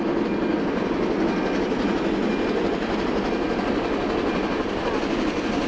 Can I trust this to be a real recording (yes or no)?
yes